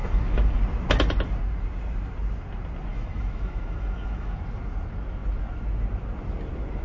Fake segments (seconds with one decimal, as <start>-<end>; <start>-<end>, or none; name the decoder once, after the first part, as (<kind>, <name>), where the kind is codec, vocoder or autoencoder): 0.0-0.6 (autoencoder, DAC-VAE); 2.9-4.4